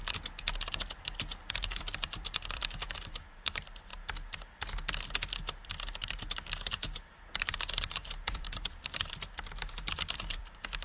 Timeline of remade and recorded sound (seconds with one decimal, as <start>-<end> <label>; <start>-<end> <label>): 0.0-1.5 recorded; 1.5-3.9 remade; 3.9-7.3 recorded; 7.3-10.8 remade